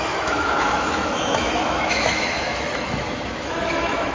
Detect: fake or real fake